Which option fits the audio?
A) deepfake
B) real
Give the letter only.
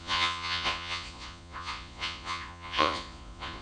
A